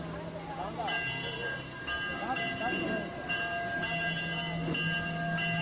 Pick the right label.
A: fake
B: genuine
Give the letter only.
B